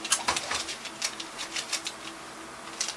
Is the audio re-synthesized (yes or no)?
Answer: no